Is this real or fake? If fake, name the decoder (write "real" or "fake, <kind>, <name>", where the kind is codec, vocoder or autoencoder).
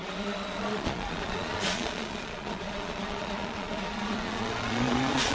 fake, vocoder, Vocos